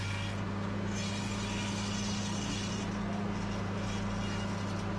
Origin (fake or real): real